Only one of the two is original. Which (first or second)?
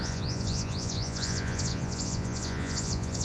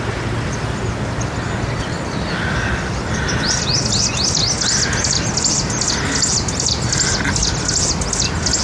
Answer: second